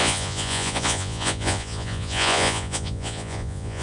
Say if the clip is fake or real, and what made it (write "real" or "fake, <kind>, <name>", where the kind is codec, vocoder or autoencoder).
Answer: fake, vocoder, Vocos